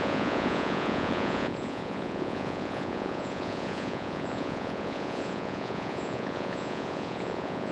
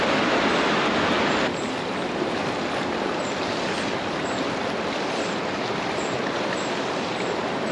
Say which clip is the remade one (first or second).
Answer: first